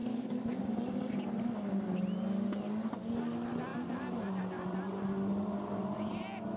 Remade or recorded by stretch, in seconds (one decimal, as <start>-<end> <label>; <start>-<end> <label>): 0.0-6.6 recorded